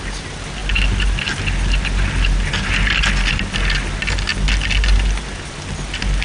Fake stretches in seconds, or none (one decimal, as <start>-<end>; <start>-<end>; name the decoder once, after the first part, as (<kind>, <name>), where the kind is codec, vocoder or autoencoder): none

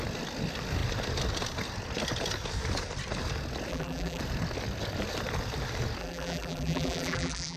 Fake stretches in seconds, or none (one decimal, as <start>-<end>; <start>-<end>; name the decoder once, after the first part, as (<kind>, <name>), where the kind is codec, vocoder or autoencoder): 3.7-4.2 (vocoder, BigVGAN v2); 6.0-7.6

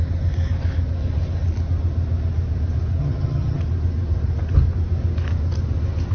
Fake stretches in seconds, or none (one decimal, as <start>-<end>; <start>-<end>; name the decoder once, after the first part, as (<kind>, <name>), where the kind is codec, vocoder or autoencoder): 3.0-3.6 (vocoder, HiFi-GAN)

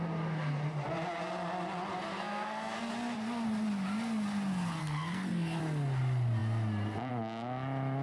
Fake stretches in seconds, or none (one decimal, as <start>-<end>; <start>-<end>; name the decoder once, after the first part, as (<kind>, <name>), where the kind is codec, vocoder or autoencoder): 1.9-2.8 (codec, SNAC); 4.8-5.6

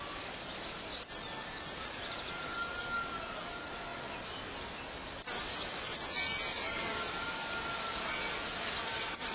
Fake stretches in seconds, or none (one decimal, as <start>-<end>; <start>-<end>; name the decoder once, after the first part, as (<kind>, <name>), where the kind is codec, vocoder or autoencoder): none

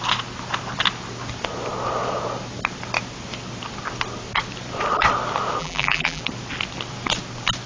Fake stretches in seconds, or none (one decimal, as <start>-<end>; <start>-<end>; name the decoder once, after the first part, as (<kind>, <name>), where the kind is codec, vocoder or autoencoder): 5.6-6.2 (vocoder, BigVGAN v2)